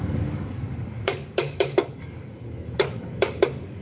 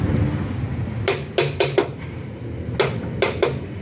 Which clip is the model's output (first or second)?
first